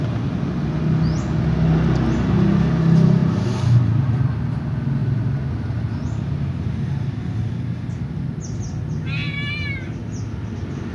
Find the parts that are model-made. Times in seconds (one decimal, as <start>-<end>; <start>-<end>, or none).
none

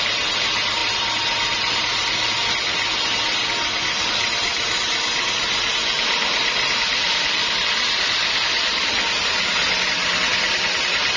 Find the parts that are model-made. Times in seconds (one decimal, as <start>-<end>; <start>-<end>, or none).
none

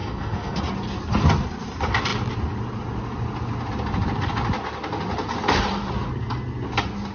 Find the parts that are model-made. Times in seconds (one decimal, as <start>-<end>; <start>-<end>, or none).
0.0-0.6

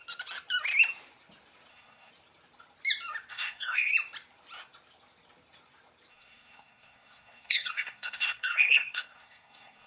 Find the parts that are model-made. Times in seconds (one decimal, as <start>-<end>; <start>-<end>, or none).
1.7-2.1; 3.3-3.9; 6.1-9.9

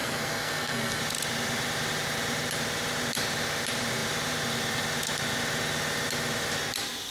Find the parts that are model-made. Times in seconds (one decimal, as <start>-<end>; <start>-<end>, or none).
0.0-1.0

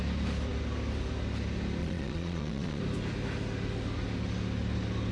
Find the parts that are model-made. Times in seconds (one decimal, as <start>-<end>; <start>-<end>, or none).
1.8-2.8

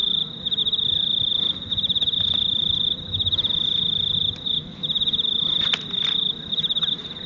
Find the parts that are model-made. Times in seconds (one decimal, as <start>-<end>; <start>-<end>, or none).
none